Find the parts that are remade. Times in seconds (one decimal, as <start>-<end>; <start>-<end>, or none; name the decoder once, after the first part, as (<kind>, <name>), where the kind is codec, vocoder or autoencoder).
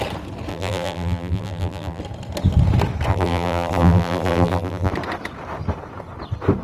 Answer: 0.5-2.0 (vocoder, BigVGAN v2); 3.1-4.9